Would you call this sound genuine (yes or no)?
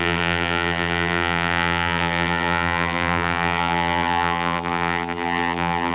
no